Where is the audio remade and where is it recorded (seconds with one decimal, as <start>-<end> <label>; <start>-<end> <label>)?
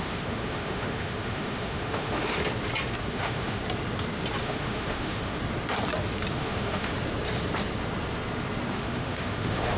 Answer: 0.0-2.4 remade; 2.4-3.0 recorded; 3.0-3.6 remade; 3.6-4.4 recorded; 4.4-5.3 remade; 5.3-6.3 recorded; 6.3-6.9 remade; 6.9-8.7 recorded; 8.7-9.8 remade